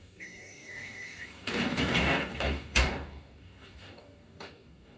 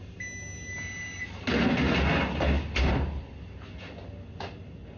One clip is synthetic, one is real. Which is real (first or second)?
second